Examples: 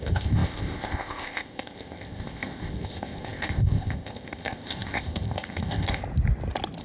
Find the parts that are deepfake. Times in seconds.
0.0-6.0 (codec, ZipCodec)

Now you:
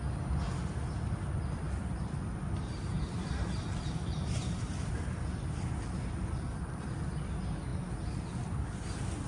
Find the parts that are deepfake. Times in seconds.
2.9-4.9 (vocoder, BigVGAN v2)

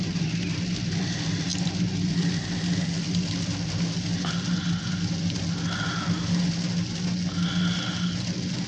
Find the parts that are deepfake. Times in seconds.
none

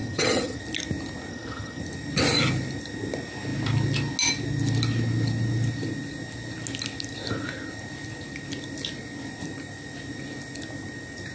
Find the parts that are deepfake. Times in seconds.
0.0-0.6 (vocoder, HiFi-GAN); 1.3-1.8

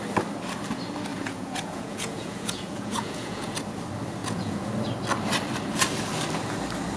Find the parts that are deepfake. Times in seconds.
1.1-3.6 (vocoder, Vocos); 4.2-4.7

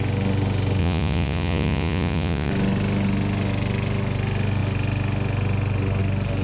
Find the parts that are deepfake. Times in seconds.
0.8-2.5 (vocoder, Vocos)

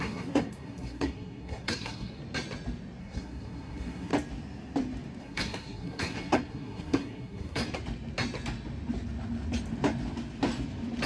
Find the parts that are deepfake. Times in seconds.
0.0-2.2 (codec, SNAC); 3.0-4.1; 5.2-7.6

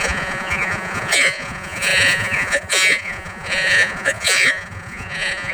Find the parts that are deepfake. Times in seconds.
0.0-5.5 (vocoder, Vocos)